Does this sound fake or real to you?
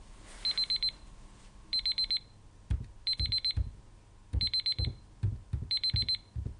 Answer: real